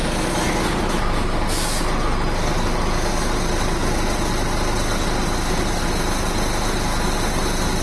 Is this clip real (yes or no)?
yes